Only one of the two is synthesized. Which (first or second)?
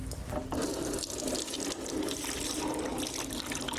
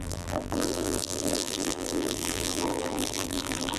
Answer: second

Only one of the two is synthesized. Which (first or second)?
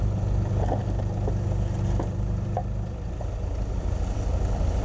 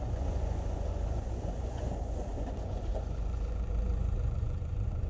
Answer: second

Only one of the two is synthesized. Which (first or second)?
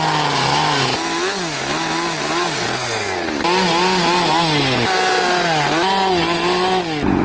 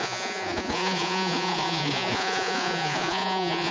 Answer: second